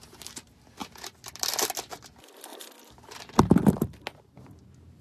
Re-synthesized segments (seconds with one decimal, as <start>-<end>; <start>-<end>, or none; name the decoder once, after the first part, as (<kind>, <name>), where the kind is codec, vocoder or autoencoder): 2.5-3.4 (vocoder, BigVGAN v2)